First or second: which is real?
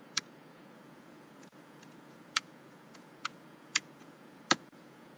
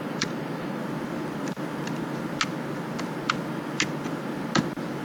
second